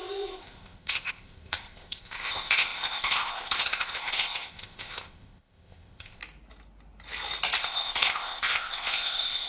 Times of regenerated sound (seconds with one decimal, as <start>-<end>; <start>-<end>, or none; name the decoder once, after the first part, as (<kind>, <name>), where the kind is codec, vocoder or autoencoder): 0.0-6.2 (codec, ZipCodec); 7.6-9.5